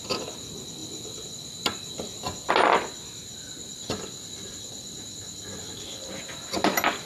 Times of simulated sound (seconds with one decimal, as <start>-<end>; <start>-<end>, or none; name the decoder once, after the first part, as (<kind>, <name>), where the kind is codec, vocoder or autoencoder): none